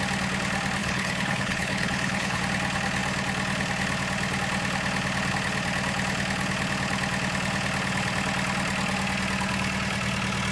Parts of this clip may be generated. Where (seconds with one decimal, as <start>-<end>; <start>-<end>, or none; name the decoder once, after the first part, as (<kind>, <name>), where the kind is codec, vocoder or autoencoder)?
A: 0.8-2.4 (codec, HILCodec)